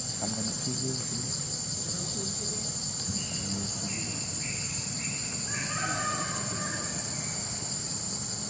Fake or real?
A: real